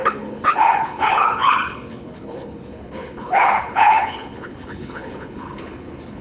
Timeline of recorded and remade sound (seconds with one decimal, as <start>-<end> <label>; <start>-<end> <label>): 0.0-6.2 remade